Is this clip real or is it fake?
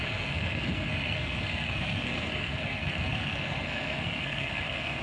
fake